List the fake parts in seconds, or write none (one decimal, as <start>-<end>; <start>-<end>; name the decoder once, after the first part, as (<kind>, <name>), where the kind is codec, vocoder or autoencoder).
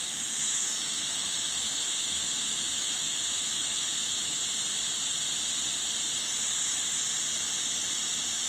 0.0-4.4 (autoencoder, DAC-VAE)